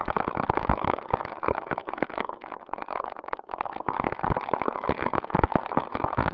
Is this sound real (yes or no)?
no